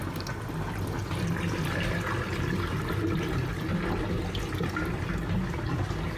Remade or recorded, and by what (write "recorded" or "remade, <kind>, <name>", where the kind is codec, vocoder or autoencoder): recorded